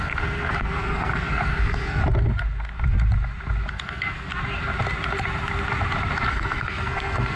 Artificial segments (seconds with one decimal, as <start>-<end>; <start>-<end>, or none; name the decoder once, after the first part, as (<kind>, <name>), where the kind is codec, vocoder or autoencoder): 0.0-2.0 (codec, SNAC); 3.7-4.3; 6.3-7.4